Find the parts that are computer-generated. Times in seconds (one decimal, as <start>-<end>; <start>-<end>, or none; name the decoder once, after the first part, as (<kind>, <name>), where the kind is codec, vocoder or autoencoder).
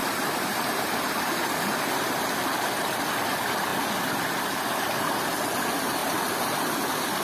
0.0-2.1 (vocoder, BigVGAN v2); 6.0-6.6